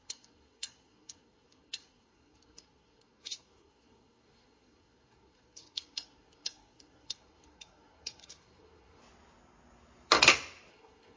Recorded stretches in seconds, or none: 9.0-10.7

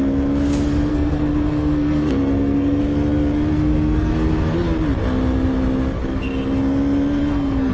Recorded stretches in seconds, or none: 0.0-0.9; 2.8-3.5; 4.1-7.2

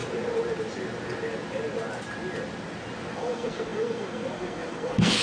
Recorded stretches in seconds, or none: 0.0-3.1

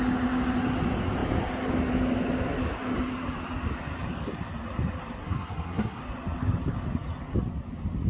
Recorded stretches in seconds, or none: 0.0-5.2; 6.0-8.1

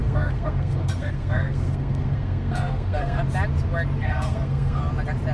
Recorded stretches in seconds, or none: 3.2-4.0; 4.8-5.3

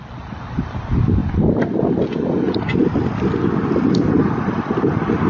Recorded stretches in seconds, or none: 0.0-5.3

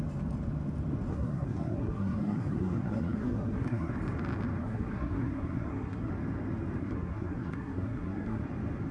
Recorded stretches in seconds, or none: 0.0-1.1; 3.9-4.6; 6.1-6.8; 8.4-8.9

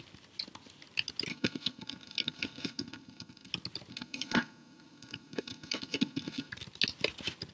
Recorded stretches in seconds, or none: 0.0-1.3; 3.5-3.9; 6.5-7.5